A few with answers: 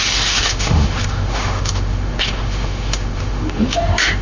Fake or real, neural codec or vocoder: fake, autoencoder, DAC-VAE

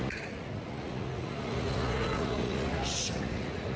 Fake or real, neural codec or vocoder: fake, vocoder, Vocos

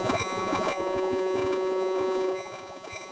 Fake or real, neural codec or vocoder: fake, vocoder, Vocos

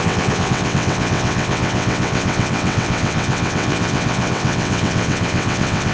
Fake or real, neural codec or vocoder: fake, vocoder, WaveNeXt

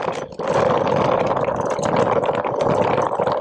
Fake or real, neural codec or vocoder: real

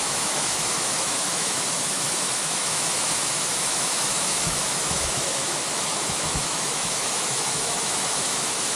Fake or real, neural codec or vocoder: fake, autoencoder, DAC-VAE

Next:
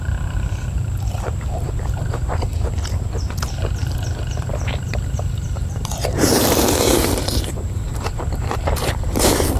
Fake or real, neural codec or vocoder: fake, vocoder, BigVGAN v2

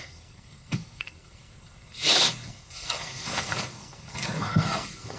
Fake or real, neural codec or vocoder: fake, codec, SNAC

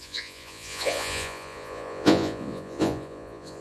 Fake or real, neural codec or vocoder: fake, vocoder, Vocos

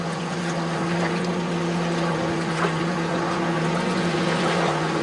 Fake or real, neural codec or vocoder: fake, vocoder, Vocos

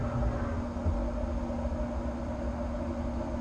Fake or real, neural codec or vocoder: real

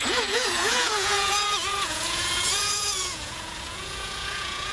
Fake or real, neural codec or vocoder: fake, vocoder, Vocos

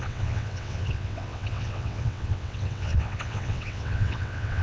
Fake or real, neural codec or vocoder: fake, vocoder, WaveNeXt